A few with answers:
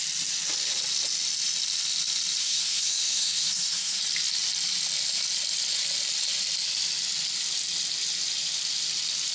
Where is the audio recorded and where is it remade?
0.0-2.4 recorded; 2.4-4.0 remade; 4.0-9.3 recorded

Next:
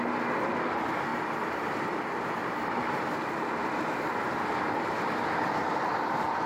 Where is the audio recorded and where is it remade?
0.0-1.1 recorded; 1.1-2.3 remade; 2.3-3.6 recorded; 3.6-6.5 remade

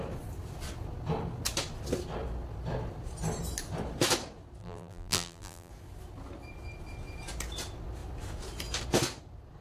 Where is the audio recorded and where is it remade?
0.0-4.6 recorded; 4.6-5.7 remade; 5.7-9.6 recorded

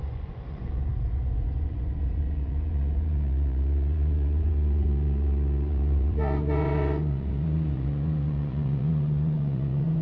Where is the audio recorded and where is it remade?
0.0-10.0 remade

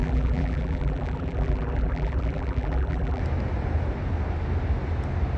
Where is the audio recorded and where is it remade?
0.0-3.2 remade; 3.2-5.4 recorded

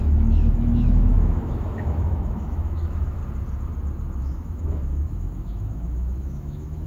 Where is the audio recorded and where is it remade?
0.0-3.2 remade; 3.2-4.2 recorded; 4.2-6.9 remade

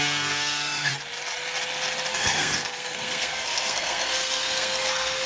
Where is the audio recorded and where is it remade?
0.0-0.9 remade; 0.9-2.1 recorded; 2.1-5.3 remade

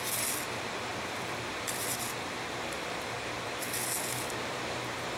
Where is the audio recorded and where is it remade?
0.0-0.9 recorded; 0.9-3.8 remade; 3.8-5.2 recorded